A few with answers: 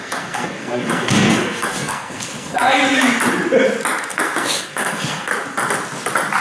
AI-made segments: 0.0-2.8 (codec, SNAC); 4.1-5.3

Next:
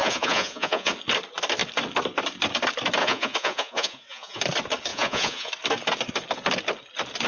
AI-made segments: 0.0-0.9 (vocoder, Vocos); 3.0-4.4; 4.9-5.5

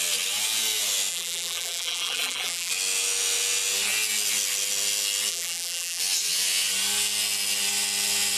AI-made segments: 1.1-2.7 (vocoder, BigVGAN v2); 5.3-6.0

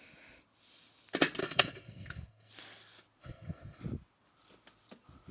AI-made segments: 1.4-2.5 (codec, SNAC); 3.2-3.8